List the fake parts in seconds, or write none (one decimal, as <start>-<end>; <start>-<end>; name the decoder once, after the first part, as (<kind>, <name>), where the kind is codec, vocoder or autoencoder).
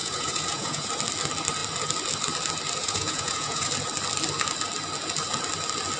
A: 0.0-0.9 (vocoder, Vocos); 2.8-3.7